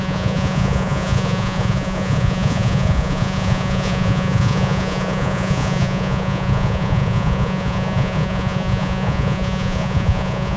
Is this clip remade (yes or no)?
yes